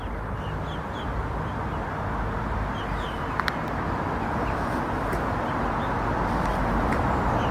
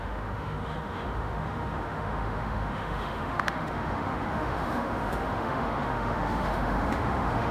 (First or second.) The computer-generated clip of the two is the second